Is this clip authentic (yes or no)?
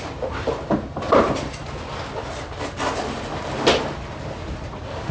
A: yes